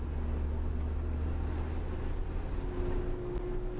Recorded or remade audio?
recorded